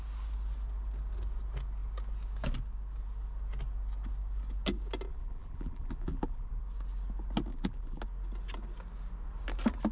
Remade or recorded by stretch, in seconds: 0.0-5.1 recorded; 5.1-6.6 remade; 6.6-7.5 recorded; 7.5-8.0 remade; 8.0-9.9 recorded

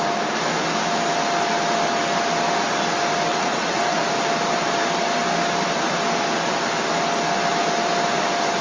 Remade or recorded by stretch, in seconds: 0.0-3.3 recorded; 3.3-4.0 remade; 4.0-8.6 recorded

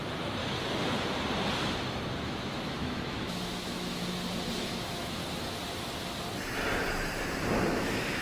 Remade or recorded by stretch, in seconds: 0.0-0.4 remade; 0.4-2.2 recorded; 2.2-4.0 remade; 4.0-4.6 recorded; 4.6-5.2 remade; 5.2-7.7 recorded; 7.7-8.2 remade

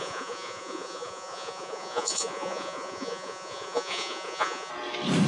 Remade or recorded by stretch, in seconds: 0.0-4.7 remade; 4.7-5.3 recorded

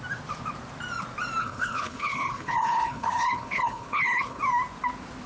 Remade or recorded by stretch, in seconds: 0.0-1.4 recorded; 1.4-4.4 remade; 4.4-5.3 recorded

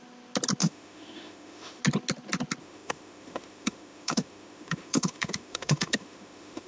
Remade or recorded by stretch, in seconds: 0.0-0.6 recorded; 0.6-1.8 remade; 1.8-2.6 recorded; 2.6-6.7 remade

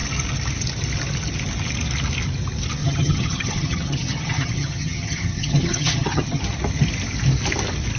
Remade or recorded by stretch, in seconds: 0.0-2.8 recorded; 2.8-6.4 remade; 6.4-8.0 recorded

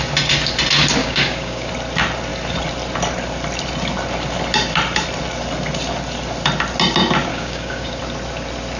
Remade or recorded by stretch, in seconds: 0.0-1.0 recorded; 1.0-1.7 remade; 1.7-7.3 recorded; 7.3-8.0 remade; 8.0-8.8 recorded